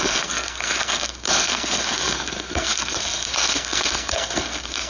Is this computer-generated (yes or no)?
yes